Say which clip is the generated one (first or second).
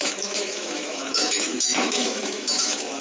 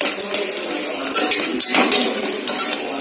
first